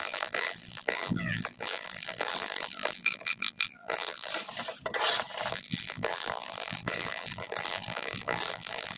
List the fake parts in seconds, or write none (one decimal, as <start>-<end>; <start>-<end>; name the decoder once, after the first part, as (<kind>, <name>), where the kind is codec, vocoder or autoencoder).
0.0-4.3 (vocoder, BigVGAN v2); 5.5-9.0